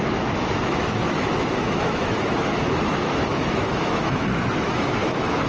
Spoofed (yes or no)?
yes